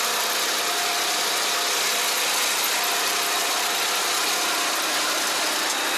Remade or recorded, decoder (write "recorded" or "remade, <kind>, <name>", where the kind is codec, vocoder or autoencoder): recorded